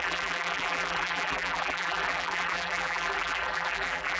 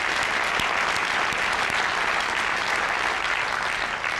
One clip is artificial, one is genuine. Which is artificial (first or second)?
first